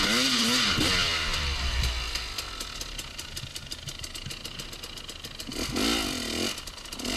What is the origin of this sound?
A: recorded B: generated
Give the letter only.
A